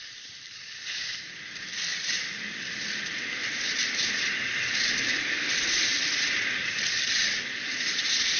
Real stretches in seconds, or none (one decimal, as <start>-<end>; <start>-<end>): 0.0-8.4